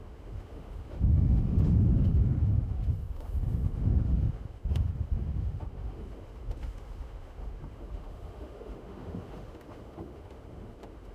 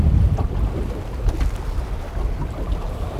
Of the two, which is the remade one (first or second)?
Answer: first